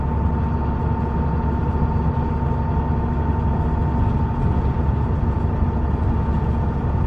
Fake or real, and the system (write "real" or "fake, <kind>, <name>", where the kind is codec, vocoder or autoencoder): real